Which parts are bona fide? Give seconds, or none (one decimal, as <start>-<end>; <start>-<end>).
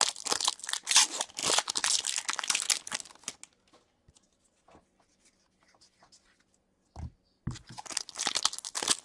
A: 0.0-9.0